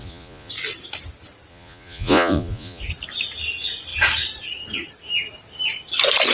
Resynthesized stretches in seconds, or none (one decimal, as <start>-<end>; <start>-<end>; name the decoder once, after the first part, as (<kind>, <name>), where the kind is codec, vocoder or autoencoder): 0.0-0.5 (vocoder, Vocos); 1.5-2.8